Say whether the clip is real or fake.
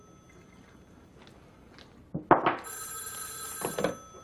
real